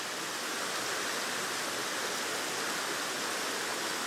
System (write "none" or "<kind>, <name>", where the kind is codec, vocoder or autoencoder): none